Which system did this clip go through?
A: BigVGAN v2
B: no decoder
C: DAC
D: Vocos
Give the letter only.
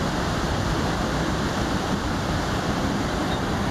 A